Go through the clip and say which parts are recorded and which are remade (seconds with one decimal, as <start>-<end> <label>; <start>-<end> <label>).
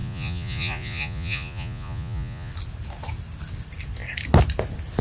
0.0-2.5 remade; 2.5-5.0 recorded